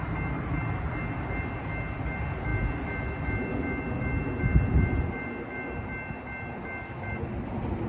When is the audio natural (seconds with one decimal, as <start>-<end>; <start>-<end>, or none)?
0.0-7.9